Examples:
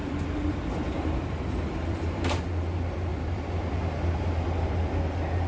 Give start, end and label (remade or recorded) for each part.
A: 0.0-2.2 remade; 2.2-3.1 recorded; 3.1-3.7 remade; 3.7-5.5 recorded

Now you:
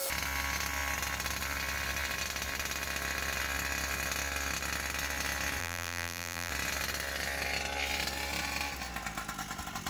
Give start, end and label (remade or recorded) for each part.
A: 0.0-5.6 recorded; 5.6-6.5 remade; 6.5-9.9 recorded